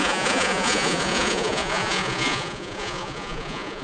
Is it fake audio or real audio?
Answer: fake